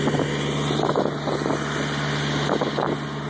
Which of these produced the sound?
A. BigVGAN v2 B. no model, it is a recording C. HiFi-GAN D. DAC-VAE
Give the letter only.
B